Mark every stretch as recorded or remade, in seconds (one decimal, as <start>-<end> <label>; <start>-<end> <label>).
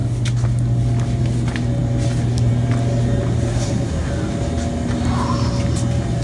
0.0-3.5 recorded; 3.5-4.1 remade; 4.1-6.2 recorded